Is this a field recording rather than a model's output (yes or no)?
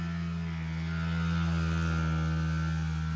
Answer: yes